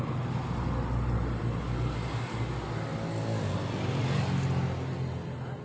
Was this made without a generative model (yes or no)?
yes